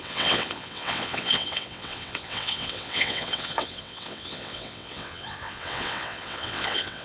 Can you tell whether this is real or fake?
fake